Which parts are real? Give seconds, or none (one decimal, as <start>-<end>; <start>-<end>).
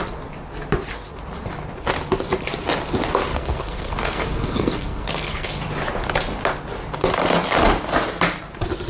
0.0-3.3; 5.5-8.9